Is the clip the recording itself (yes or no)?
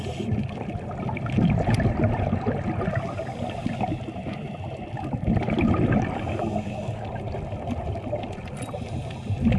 yes